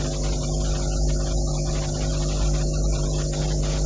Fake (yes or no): no